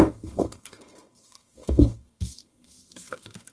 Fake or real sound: fake